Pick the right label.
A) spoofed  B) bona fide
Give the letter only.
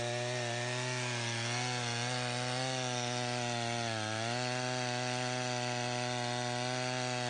B